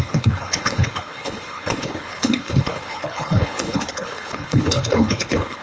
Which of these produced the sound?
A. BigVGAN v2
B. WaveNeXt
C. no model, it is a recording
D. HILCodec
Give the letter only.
D